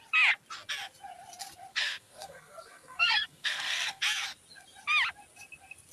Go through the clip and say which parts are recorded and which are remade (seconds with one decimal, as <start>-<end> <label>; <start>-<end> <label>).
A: 0.0-1.7 recorded; 1.7-4.0 remade; 4.0-5.9 recorded

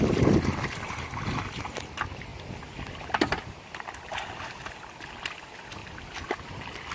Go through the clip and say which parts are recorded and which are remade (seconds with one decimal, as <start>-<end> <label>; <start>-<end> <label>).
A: 0.0-6.9 recorded

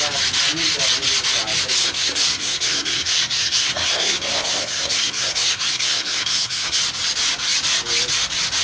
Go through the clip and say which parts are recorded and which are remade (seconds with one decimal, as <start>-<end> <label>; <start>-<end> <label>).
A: 0.0-1.8 recorded; 1.8-6.8 remade; 6.8-8.6 recorded

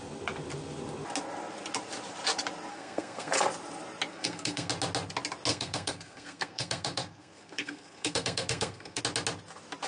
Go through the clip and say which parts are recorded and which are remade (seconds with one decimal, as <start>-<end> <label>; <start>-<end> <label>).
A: 0.0-2.7 recorded; 2.7-3.3 remade; 3.3-4.1 recorded; 4.1-4.7 remade; 4.7-5.5 recorded; 5.5-9.0 remade; 9.0-9.9 recorded